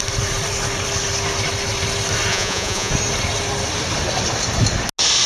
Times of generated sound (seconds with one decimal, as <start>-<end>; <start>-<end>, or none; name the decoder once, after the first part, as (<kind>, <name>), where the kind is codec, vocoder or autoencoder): 2.3-2.9 (vocoder, Vocos)